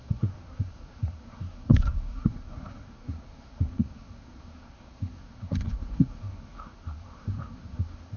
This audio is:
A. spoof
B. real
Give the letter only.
A